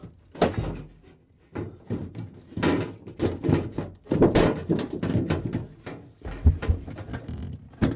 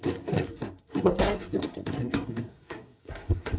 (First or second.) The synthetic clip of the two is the second